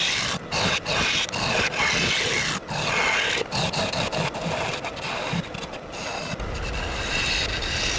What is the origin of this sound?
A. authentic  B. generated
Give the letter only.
A